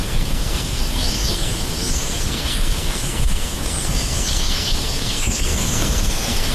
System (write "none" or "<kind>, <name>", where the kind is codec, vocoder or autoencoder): codec, SNAC